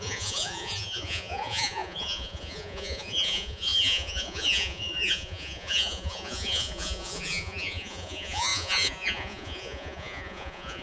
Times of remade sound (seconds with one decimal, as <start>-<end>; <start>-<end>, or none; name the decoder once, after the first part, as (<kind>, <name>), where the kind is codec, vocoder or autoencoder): 0.0-10.8 (vocoder, Vocos)